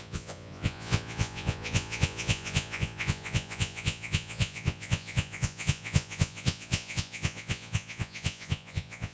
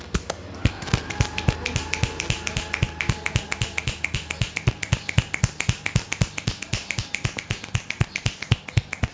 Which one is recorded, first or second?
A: second